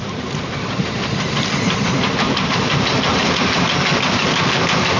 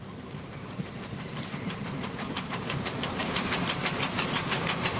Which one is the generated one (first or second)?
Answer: second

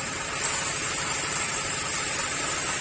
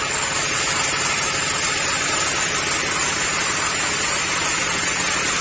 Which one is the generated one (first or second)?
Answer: first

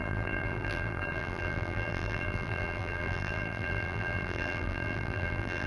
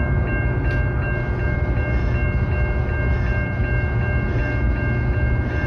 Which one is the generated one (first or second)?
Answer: first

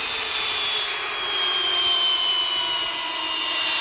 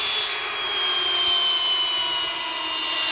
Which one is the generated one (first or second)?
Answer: first